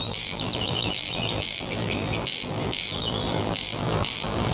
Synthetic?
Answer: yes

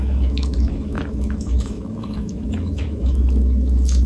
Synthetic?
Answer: yes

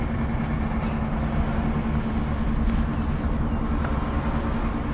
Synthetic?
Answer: no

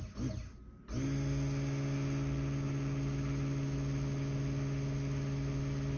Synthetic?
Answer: no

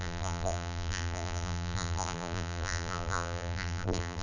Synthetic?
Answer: yes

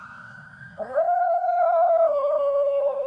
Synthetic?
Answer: yes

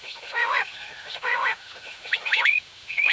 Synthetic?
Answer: yes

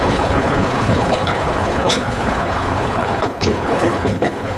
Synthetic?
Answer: yes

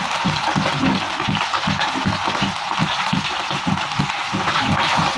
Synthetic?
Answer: no